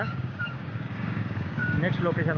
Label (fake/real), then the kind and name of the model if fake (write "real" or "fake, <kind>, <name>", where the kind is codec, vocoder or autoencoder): fake, codec, DAC